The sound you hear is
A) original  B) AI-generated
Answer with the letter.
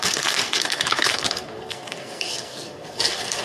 B